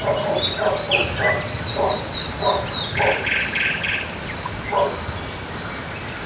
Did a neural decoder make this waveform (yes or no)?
no